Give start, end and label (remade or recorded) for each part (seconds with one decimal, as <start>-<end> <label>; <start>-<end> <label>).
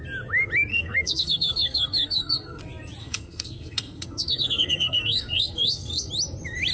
0.0-0.7 recorded; 0.7-2.6 remade; 2.6-3.0 recorded; 3.0-6.1 remade; 6.1-6.7 recorded